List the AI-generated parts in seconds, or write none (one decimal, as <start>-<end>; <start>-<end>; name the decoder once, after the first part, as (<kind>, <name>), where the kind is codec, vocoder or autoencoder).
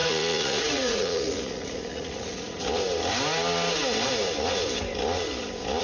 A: 0.0-2.6 (vocoder, Vocos)